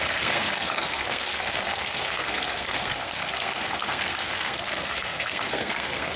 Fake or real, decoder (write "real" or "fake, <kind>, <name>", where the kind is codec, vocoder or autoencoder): fake, codec, SNAC